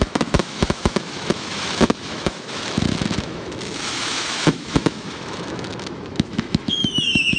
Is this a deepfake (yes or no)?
yes